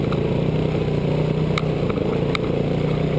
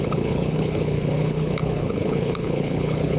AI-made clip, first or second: second